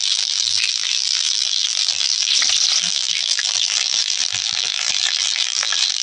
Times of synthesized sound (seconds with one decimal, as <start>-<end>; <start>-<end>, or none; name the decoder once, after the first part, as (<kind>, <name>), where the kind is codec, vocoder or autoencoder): 0.0-2.3 (vocoder, BigVGAN v2); 2.8-6.0